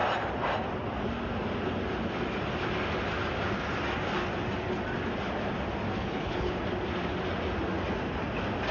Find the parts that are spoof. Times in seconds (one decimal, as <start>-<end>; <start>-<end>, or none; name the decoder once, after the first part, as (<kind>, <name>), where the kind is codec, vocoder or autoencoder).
6.0-6.5 (codec, HILCodec)